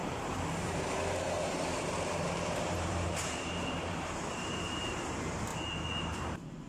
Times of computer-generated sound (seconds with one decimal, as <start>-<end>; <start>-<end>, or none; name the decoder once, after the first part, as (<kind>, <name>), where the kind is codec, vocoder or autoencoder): 0.0-5.5 (vocoder, BigVGAN v2); 6.0-6.7